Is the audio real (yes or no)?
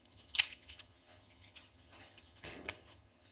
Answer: no